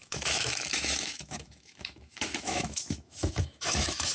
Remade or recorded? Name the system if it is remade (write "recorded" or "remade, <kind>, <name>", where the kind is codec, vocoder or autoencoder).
remade, autoencoder, DAC-VAE